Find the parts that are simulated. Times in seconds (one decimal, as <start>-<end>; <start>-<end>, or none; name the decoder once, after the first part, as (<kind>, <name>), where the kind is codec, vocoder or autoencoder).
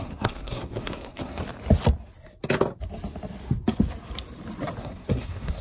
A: 0.0-1.4 (codec, SNAC); 4.8-5.6